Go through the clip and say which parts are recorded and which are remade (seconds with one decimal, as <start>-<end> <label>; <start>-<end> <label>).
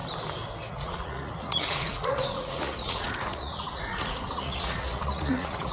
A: 0.0-0.7 recorded; 0.7-5.7 remade